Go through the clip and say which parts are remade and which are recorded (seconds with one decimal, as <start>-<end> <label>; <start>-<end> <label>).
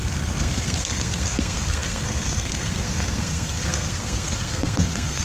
0.0-5.2 remade